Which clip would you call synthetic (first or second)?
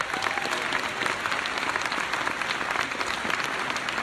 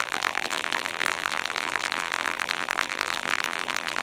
second